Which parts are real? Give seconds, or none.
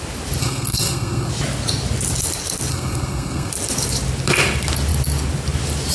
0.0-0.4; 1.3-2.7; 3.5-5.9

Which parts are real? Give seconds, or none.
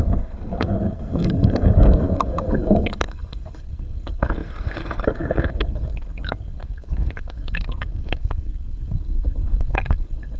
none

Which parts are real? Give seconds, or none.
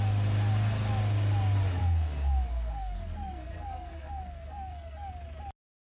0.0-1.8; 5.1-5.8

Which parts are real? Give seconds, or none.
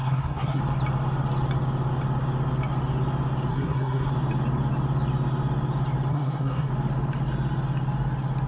0.6-3.5; 4.1-6.1; 6.7-8.5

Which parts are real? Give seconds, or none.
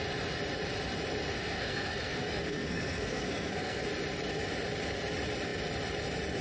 0.0-1.4; 3.8-6.4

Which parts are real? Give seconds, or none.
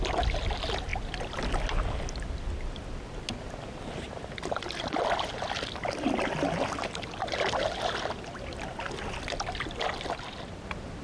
0.0-11.0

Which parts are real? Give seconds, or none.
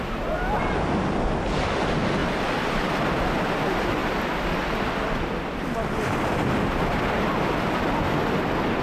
0.0-8.8